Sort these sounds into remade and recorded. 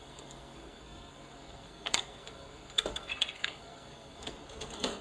remade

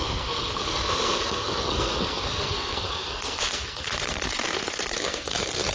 remade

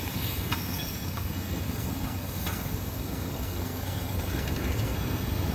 remade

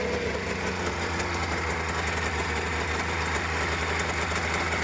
recorded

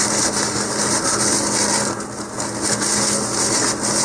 recorded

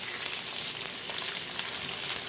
recorded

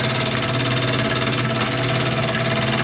recorded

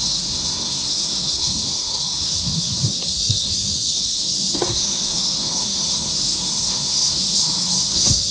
remade